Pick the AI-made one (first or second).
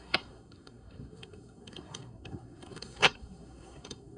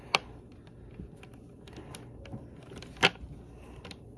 first